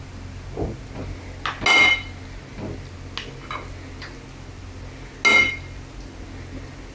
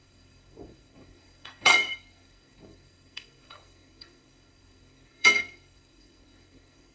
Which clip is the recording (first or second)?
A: first